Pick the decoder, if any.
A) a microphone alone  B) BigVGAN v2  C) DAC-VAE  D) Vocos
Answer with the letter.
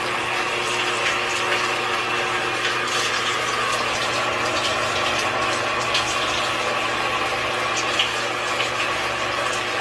A